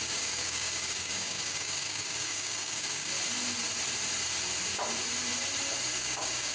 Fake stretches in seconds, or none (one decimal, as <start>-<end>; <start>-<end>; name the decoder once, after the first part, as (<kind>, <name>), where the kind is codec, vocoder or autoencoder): 0.0-3.1 (codec, DAC); 6.0-6.5